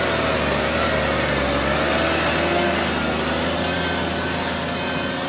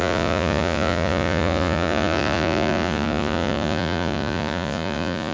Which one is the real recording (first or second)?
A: first